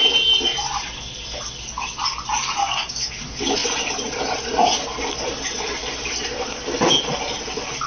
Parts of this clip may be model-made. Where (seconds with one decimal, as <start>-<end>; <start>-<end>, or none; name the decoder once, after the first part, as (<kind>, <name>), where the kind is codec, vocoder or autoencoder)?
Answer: 2.6-3.2 (codec, DAC)